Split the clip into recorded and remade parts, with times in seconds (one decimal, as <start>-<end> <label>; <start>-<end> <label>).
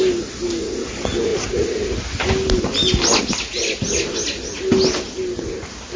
0.0-6.0 recorded